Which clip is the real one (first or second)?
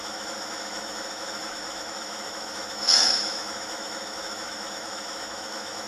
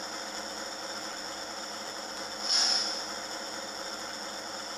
second